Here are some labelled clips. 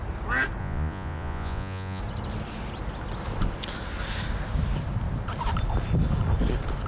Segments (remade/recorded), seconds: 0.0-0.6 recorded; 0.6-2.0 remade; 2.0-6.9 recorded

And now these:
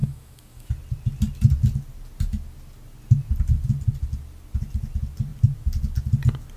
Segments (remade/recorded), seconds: 0.0-0.7 remade; 0.7-6.6 recorded

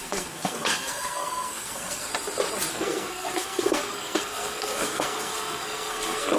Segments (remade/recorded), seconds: 0.0-2.1 remade; 2.1-2.7 recorded; 2.7-6.4 remade

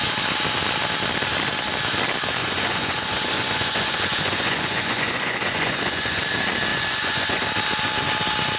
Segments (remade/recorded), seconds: 0.0-2.4 recorded; 2.4-6.2 remade; 6.2-6.7 recorded; 6.7-7.5 remade; 7.5-8.6 recorded

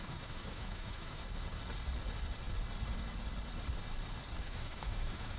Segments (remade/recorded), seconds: 0.0-1.2 remade; 1.2-4.4 recorded; 4.4-5.4 remade